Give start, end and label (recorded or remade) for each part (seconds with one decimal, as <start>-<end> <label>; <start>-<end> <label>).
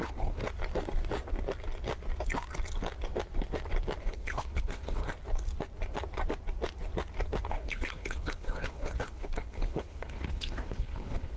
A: 0.0-0.4 remade; 0.4-4.0 recorded; 4.0-5.0 remade; 5.0-7.5 recorded; 7.5-11.4 remade